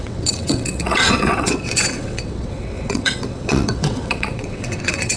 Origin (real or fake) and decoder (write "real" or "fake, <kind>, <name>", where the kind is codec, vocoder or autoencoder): fake, vocoder, WaveNeXt